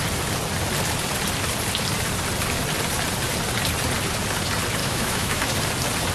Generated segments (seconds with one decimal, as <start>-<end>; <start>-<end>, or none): 4.8-5.4